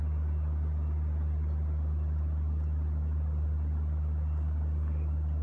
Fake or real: real